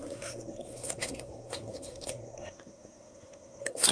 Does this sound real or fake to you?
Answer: fake